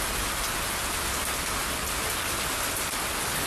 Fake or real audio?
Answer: real